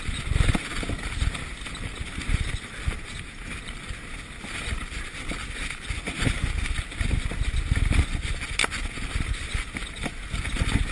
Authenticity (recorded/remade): recorded